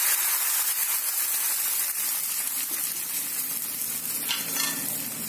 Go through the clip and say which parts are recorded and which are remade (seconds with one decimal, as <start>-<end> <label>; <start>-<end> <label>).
0.0-5.3 recorded

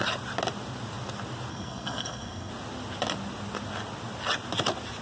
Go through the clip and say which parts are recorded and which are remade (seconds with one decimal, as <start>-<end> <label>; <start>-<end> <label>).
0.0-1.5 recorded; 1.5-2.5 remade; 2.5-5.0 recorded

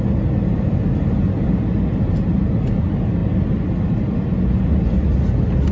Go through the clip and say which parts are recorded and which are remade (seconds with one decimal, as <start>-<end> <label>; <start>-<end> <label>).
0.0-5.7 recorded

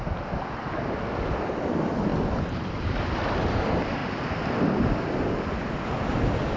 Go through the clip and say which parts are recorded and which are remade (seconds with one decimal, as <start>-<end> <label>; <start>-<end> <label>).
0.0-6.6 recorded

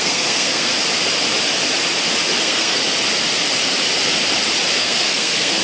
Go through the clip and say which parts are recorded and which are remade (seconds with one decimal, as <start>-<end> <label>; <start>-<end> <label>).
0.0-0.7 remade; 0.7-2.4 recorded; 2.4-2.8 remade; 2.8-4.7 recorded; 4.7-5.6 remade

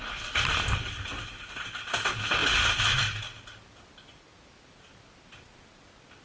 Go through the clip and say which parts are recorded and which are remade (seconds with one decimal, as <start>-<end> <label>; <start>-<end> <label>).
0.0-6.2 recorded

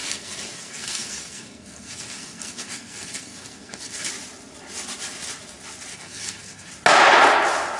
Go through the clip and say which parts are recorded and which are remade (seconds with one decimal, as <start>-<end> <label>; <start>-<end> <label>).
0.0-4.1 remade; 4.1-5.9 recorded; 5.9-6.7 remade; 6.7-7.8 recorded